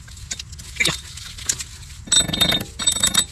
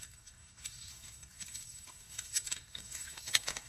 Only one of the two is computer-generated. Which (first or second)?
second